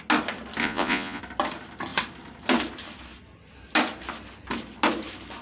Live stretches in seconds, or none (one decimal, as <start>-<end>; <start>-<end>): 0.0-0.6; 1.2-5.4